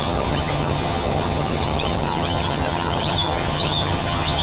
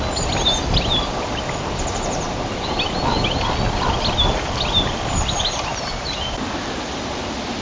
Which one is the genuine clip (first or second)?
second